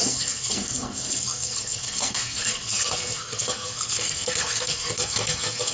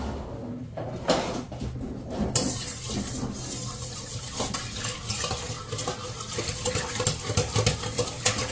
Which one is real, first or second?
second